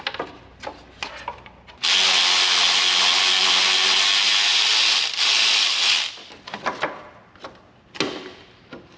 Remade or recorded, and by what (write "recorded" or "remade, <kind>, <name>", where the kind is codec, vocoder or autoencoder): recorded